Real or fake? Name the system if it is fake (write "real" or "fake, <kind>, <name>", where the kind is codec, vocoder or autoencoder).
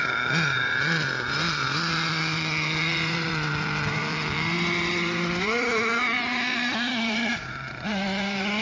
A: fake, vocoder, BigVGAN v2